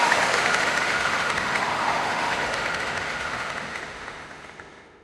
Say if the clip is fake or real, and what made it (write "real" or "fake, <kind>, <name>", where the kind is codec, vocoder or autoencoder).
fake, autoencoder, DAC-VAE